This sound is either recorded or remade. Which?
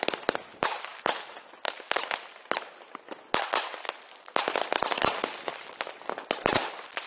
recorded